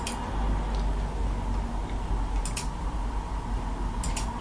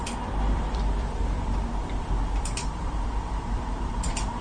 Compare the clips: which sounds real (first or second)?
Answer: first